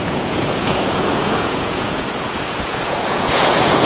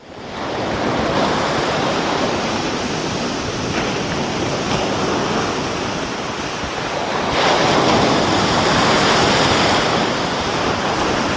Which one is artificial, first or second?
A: first